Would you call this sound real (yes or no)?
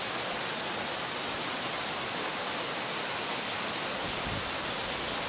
yes